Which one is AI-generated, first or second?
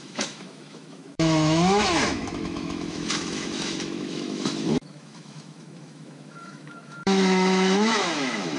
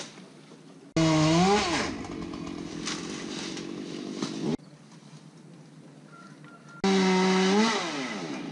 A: first